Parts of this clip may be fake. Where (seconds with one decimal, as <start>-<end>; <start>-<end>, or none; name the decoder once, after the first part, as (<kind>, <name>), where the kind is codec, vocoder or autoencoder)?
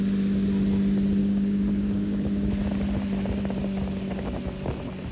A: 1.2-2.5 (codec, DAC)